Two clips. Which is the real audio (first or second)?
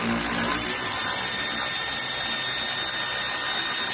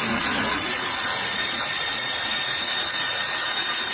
first